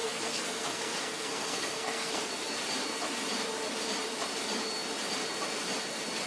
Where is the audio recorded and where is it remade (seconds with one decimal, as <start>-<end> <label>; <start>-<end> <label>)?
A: 0.0-2.3 remade; 2.3-6.3 recorded